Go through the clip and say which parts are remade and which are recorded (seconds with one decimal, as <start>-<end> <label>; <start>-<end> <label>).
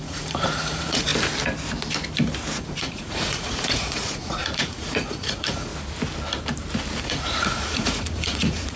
0.0-1.1 remade; 1.1-2.6 recorded; 2.6-5.7 remade; 5.7-7.0 recorded; 7.0-8.8 remade